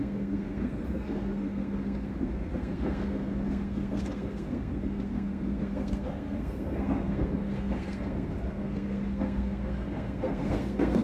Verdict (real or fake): fake